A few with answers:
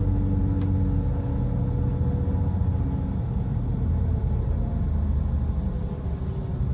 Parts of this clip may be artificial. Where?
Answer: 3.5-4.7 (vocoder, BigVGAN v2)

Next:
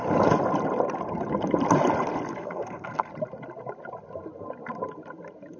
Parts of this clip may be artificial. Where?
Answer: 2.4-3.1 (codec, SNAC)